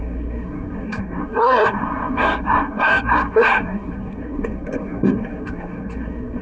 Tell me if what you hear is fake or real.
fake